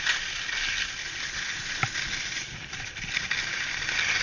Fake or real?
real